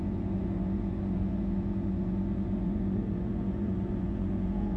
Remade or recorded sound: remade